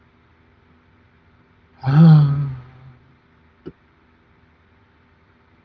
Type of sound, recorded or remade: recorded